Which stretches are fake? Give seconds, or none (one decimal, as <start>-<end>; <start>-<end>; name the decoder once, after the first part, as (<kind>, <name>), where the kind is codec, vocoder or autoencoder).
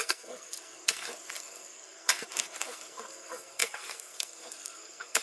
0.0-5.2 (codec, SNAC)